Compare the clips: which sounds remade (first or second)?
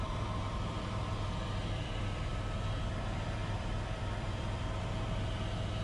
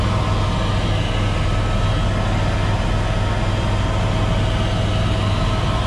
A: first